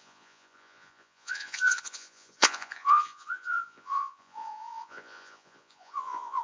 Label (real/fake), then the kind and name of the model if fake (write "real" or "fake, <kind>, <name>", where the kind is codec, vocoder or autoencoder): fake, vocoder, Vocos